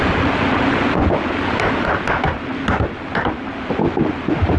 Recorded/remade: recorded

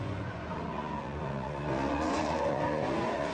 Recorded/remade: remade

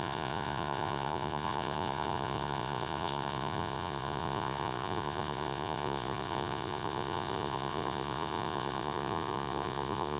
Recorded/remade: remade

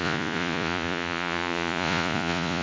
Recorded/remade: remade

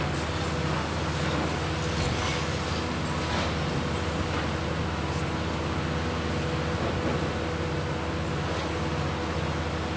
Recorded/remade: recorded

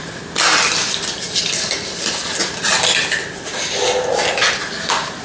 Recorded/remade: recorded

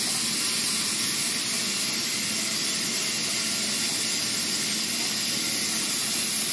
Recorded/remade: recorded